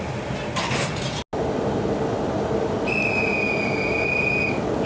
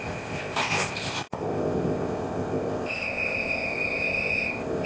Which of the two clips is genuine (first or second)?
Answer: first